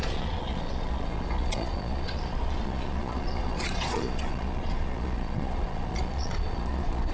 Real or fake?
fake